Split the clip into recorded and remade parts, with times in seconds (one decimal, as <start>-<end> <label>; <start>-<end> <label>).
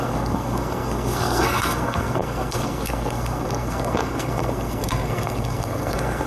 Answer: 0.0-6.3 remade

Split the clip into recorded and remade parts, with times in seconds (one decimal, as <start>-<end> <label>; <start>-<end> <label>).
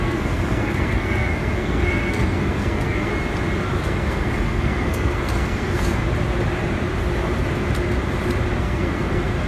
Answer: 0.0-3.1 remade; 3.1-3.7 recorded; 3.7-6.0 remade; 6.0-8.6 recorded; 8.6-9.5 remade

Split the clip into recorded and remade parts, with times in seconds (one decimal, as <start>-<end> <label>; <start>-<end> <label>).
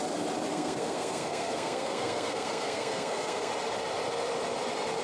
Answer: 0.0-0.5 recorded; 0.5-3.5 remade; 3.5-5.0 recorded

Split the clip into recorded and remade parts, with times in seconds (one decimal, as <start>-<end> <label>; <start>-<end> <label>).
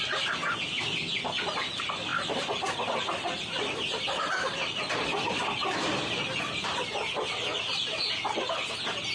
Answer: 0.0-9.1 recorded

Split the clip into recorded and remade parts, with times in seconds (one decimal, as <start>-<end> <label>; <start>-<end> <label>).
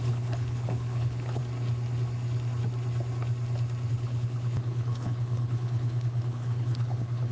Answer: 0.0-1.4 remade; 1.4-3.9 recorded; 3.9-7.3 remade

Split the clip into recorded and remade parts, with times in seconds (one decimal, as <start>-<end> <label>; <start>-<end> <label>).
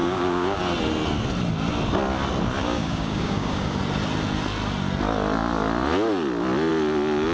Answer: 0.0-0.6 remade; 0.6-2.6 recorded; 2.6-3.8 remade; 3.8-7.3 recorded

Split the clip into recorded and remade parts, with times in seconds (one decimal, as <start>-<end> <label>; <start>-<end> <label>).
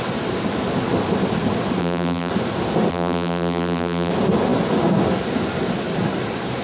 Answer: 0.0-1.8 recorded; 1.8-2.3 remade; 2.3-2.9 recorded; 2.9-4.1 remade; 4.1-6.6 recorded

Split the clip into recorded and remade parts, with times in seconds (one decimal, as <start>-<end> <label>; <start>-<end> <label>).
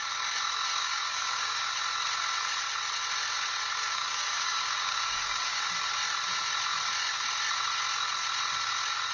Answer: 0.0-0.8 recorded; 0.8-1.7 remade; 1.7-3.8 recorded; 3.8-5.7 remade; 5.7-9.1 recorded